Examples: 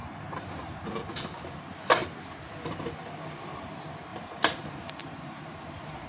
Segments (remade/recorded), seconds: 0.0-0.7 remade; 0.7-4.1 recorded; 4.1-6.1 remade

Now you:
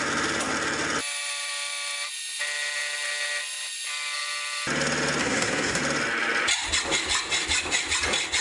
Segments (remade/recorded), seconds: 0.0-5.2 recorded; 5.2-5.8 remade; 5.8-8.4 recorded